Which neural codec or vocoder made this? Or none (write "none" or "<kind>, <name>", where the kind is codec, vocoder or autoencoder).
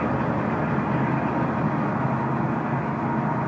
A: none